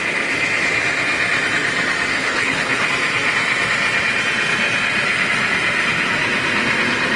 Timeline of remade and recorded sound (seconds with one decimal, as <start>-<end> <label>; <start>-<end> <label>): 0.0-2.1 recorded; 2.1-2.9 remade; 2.9-7.2 recorded